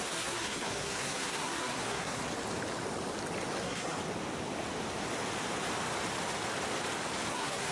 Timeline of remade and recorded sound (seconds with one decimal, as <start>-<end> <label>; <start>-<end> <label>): 0.0-2.2 remade; 2.2-3.6 recorded; 3.6-4.0 remade; 4.0-7.3 recorded; 7.3-7.7 remade